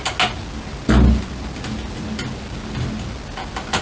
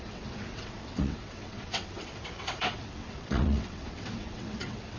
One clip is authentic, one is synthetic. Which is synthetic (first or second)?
second